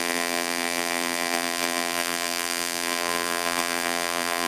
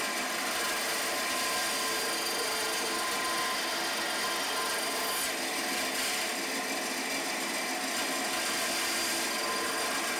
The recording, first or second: second